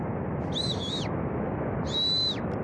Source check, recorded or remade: recorded